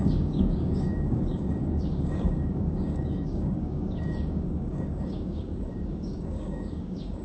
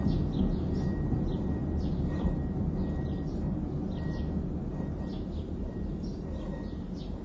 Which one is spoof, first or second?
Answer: first